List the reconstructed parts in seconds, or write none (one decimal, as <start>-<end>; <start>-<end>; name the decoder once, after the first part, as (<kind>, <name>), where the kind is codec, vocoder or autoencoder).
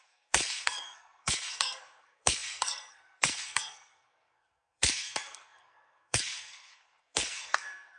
0.0-8.0 (codec, SNAC)